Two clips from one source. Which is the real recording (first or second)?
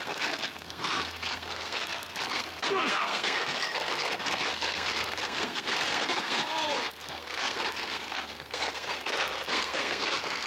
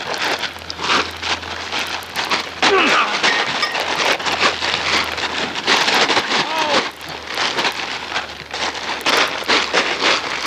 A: second